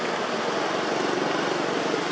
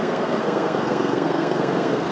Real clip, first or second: first